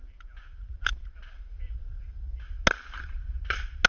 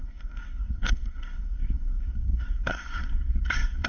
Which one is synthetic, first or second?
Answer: second